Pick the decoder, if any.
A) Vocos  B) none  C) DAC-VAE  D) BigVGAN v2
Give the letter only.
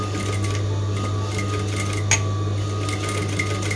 B